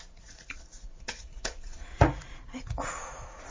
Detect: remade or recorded remade